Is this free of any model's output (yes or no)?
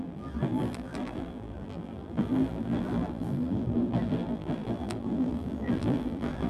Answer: no